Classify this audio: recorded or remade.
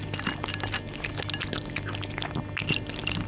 recorded